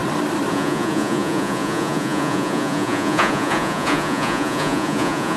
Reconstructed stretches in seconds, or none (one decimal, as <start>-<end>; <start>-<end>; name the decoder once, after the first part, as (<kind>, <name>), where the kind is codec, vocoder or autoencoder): 0.5-5.4 (vocoder, Vocos)